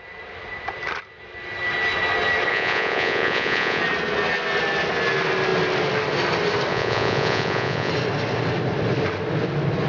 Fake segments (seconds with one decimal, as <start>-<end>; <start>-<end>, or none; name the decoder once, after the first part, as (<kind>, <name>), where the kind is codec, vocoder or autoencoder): 2.5-3.8 (vocoder, Vocos); 6.7-7.9